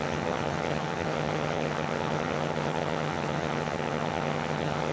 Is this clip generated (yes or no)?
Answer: yes